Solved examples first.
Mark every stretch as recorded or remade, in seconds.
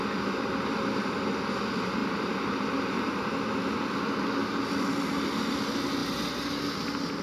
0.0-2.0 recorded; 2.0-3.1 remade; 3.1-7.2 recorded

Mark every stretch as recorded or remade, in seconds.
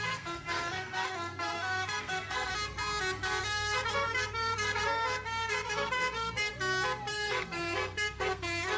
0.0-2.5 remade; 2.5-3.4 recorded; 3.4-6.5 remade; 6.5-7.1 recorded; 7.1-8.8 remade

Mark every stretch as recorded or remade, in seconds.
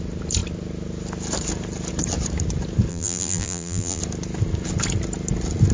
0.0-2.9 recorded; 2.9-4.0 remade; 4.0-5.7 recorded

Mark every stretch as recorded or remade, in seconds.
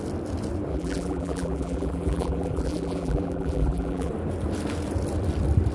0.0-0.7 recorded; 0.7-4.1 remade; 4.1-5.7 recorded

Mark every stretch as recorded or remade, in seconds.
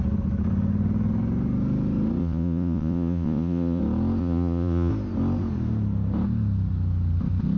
0.0-2.2 recorded; 2.2-3.8 remade; 3.8-4.2 recorded; 4.2-4.9 remade; 4.9-7.6 recorded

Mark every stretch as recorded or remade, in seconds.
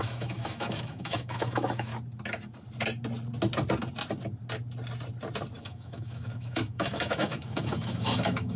0.0-1.9 remade; 1.9-5.6 recorded; 5.6-8.6 remade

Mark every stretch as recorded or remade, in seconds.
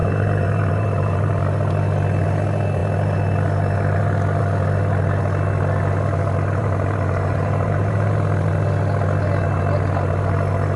0.0-1.4 remade; 1.4-6.6 recorded; 6.6-8.1 remade; 8.1-10.8 recorded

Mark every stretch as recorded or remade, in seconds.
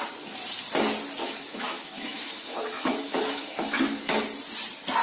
0.0-1.2 recorded; 1.2-4.2 remade; 4.2-5.0 recorded